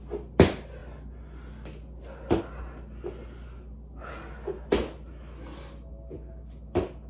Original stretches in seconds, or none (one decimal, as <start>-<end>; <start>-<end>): 0.0-7.1